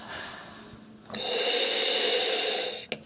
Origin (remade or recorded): recorded